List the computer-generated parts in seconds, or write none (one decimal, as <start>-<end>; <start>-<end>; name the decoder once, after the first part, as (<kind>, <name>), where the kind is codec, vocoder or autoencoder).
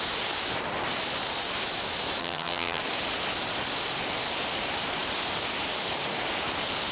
2.2-2.8 (vocoder, HiFi-GAN)